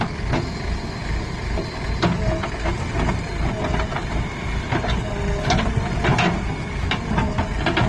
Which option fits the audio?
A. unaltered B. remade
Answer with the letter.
A